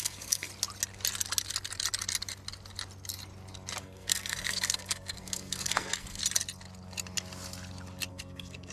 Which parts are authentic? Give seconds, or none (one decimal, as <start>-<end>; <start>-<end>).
0.5-3.8; 6.2-8.1